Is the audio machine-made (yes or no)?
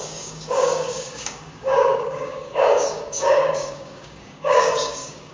yes